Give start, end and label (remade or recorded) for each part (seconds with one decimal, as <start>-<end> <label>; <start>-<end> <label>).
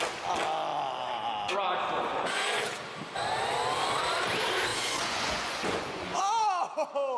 0.0-2.1 recorded; 2.1-2.6 remade; 2.6-4.7 recorded; 4.7-6.2 remade; 6.2-7.2 recorded